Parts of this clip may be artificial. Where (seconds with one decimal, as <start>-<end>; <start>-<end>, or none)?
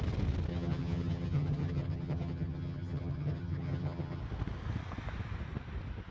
0.5-4.2